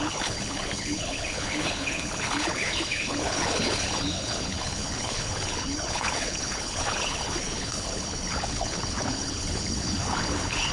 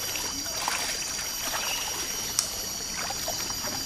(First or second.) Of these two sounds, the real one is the second